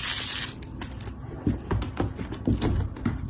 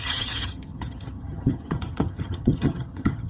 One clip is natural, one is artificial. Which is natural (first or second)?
first